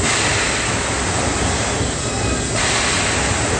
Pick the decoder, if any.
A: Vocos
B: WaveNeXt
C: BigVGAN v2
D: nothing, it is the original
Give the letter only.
D